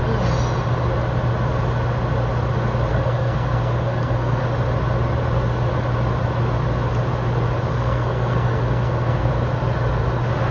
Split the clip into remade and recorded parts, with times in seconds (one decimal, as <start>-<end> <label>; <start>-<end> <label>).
0.0-2.9 recorded; 2.9-4.4 remade; 4.4-7.7 recorded; 7.7-9.3 remade; 9.3-10.5 recorded